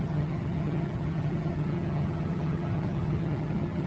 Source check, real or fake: fake